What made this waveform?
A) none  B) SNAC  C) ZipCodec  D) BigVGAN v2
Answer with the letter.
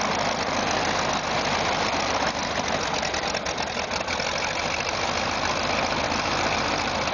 A